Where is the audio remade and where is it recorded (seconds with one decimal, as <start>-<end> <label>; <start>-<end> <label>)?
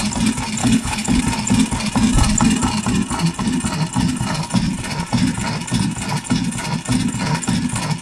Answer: 0.0-0.6 recorded; 0.6-1.2 remade; 1.2-8.0 recorded